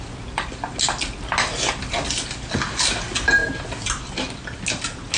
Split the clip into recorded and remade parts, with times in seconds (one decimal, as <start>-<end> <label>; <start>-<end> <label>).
0.0-5.2 recorded